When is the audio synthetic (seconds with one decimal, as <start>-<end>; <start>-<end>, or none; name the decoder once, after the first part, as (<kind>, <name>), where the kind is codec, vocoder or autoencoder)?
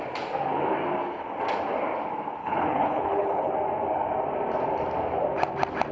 2.4-3.5 (codec, HILCodec)